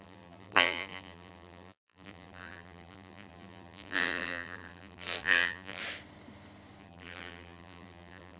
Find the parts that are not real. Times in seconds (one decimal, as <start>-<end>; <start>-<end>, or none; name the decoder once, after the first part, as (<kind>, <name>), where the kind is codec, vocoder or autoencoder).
0.0-5.8 (vocoder, BigVGAN v2); 6.8-8.4